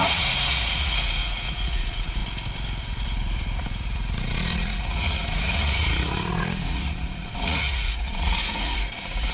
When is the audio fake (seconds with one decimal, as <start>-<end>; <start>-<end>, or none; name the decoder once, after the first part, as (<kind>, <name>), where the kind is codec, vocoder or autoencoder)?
0.0-2.2 (vocoder, Vocos); 2.8-9.3